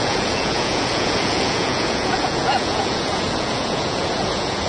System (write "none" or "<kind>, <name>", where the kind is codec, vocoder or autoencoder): vocoder, Vocos